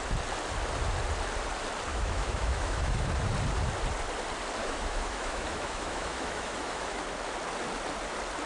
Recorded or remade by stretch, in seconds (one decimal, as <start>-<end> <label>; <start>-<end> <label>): 0.0-1.9 recorded; 1.9-3.1 remade; 3.1-4.6 recorded; 4.6-7.0 remade; 7.0-8.5 recorded